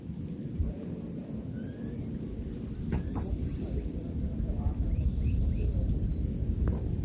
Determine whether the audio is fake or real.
real